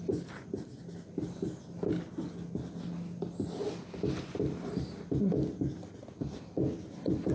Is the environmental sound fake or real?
real